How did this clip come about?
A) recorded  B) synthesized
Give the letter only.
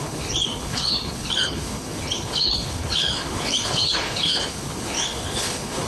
B